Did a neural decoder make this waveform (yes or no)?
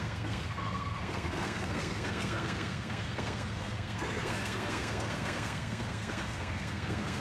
yes